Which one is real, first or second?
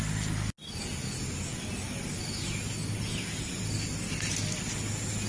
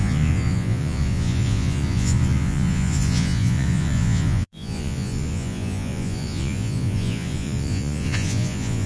first